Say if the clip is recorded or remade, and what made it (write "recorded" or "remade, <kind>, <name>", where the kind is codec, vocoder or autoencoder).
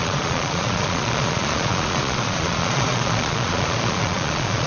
remade, vocoder, Vocos